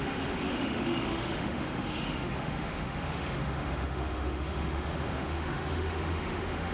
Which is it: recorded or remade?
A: remade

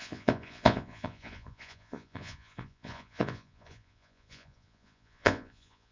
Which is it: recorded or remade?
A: remade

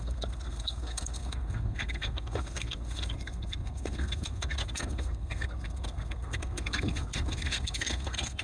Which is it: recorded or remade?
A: remade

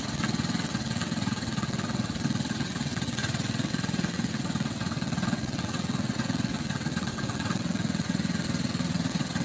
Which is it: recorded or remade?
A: remade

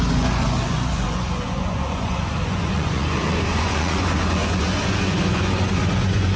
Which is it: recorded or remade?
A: remade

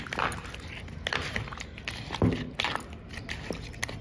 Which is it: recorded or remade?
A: recorded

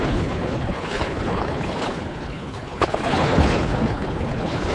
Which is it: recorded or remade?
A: remade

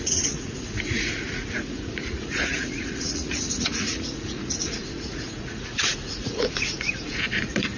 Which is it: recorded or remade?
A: remade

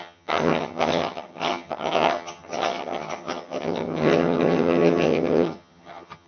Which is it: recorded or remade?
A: remade